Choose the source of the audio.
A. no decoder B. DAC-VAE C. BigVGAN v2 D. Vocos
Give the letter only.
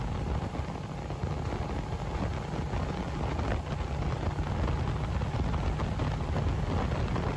A